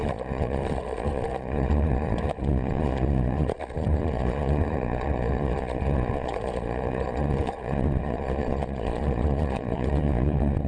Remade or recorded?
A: remade